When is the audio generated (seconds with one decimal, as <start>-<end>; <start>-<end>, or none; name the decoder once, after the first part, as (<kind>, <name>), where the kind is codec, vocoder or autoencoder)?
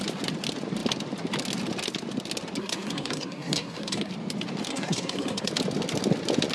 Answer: 2.6-4.1 (codec, SNAC); 4.7-5.5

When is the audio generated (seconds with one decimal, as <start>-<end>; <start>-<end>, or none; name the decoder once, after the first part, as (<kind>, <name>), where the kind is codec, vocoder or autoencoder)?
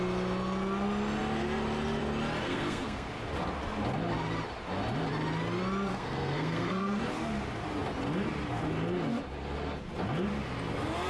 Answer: 2.4-3.1 (codec, SNAC); 5.9-7.0